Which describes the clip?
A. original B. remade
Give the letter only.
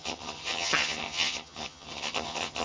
B